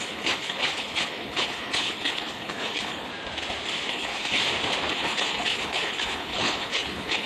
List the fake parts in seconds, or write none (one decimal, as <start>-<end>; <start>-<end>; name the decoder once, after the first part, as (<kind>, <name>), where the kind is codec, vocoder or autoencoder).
0.0-3.1 (codec, HILCodec); 3.9-4.4; 4.9-7.3